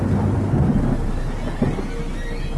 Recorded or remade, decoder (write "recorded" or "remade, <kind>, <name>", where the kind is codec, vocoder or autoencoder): recorded